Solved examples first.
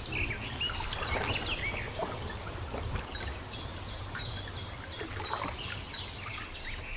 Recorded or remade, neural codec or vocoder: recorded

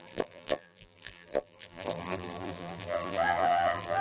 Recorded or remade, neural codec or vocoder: remade, vocoder, BigVGAN v2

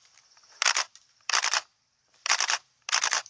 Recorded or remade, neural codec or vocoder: remade, vocoder, BigVGAN v2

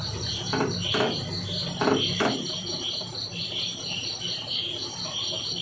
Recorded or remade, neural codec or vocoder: remade, vocoder, BigVGAN v2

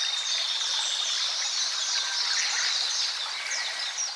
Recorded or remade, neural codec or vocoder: recorded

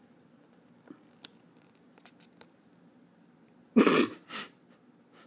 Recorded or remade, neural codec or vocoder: recorded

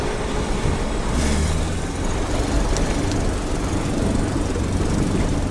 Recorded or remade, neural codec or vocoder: remade, vocoder, BigVGAN v2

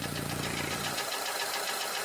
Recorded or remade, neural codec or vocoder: remade, vocoder, BigVGAN v2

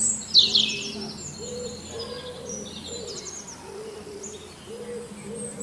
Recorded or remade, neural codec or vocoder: recorded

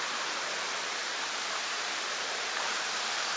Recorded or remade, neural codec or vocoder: remade, vocoder, BigVGAN v2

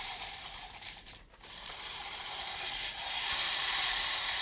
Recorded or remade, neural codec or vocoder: remade, vocoder, BigVGAN v2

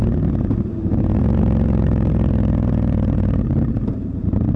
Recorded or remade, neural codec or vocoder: remade, vocoder, BigVGAN v2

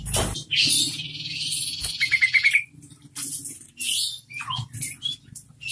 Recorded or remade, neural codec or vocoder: recorded